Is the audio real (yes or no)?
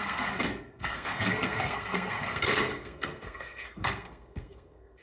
no